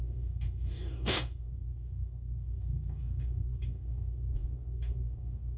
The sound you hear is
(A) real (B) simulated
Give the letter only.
B